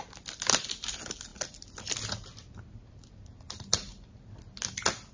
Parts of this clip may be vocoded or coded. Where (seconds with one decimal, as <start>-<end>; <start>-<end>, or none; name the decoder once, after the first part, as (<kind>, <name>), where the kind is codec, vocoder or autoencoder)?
none